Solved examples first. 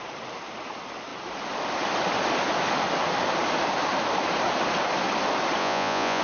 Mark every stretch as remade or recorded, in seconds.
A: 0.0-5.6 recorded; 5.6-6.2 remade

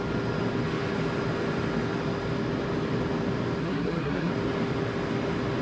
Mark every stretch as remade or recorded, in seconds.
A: 0.0-3.6 recorded; 3.6-4.3 remade; 4.3-5.6 recorded

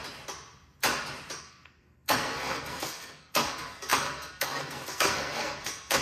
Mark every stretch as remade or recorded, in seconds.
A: 0.0-1.4 recorded; 1.4-6.0 remade

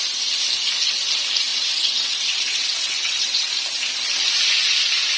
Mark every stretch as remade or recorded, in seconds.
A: 0.0-1.5 recorded; 1.5-3.5 remade; 3.5-5.2 recorded

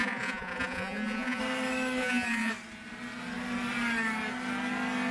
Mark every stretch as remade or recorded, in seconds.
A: 0.0-1.4 remade; 1.4-2.0 recorded; 2.0-2.5 remade; 2.5-5.1 recorded